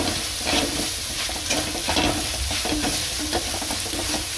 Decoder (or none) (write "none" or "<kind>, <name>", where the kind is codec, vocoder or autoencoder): none